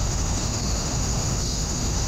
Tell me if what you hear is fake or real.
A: fake